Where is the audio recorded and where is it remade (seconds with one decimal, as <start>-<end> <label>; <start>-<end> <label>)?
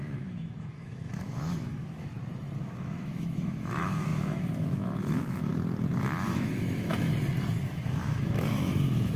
0.0-2.1 remade; 2.1-2.6 recorded; 2.6-5.5 remade; 5.5-6.0 recorded; 6.0-7.1 remade; 7.1-7.6 recorded; 7.6-9.2 remade